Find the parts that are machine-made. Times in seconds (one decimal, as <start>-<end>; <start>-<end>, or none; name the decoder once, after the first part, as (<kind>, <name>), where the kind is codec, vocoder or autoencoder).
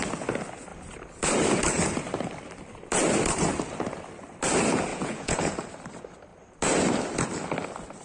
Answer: 4.9-5.5 (vocoder, Vocos)